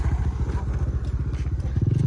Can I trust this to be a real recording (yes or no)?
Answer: yes